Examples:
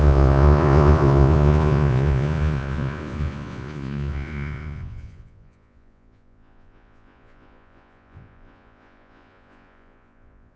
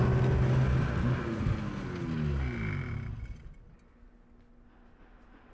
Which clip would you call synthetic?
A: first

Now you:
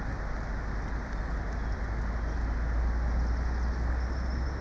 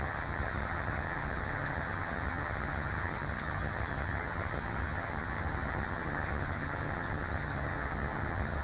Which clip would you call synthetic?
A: second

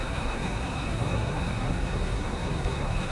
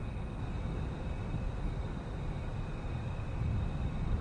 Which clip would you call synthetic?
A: first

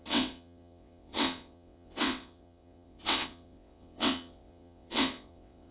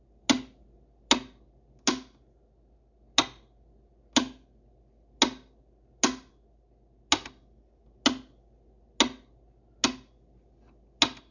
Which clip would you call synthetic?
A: first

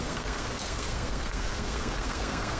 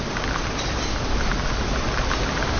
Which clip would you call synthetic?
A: first